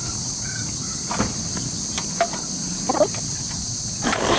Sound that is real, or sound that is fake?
real